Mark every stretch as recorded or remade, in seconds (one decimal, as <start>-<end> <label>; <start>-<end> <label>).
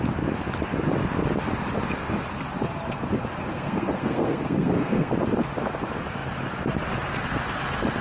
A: 0.0-3.5 recorded; 3.5-5.1 remade; 5.1-8.0 recorded